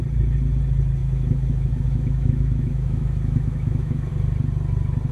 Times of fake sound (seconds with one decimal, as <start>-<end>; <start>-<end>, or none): 1.0-4.1